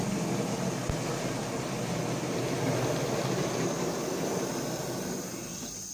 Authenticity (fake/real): real